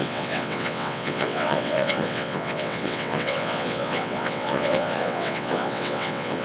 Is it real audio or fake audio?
fake